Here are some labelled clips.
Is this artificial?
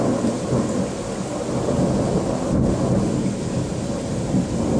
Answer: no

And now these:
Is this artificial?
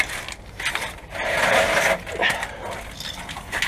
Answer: no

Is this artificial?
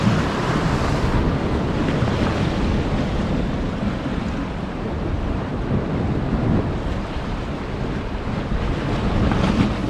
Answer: no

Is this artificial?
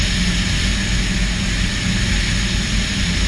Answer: no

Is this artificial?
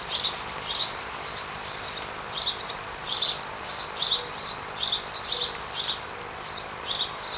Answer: no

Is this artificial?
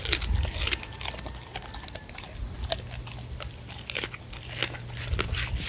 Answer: no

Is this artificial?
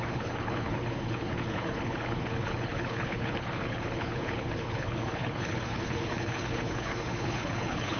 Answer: yes